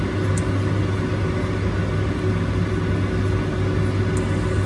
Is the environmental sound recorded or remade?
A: recorded